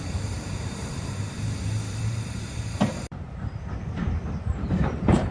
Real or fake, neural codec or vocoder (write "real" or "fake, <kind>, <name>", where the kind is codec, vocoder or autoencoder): fake, vocoder, BigVGAN v2